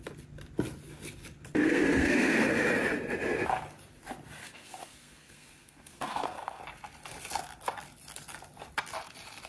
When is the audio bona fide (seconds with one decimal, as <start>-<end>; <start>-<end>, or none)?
0.0-1.6; 2.5-4.4; 6.6-9.5